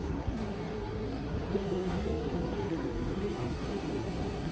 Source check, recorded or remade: remade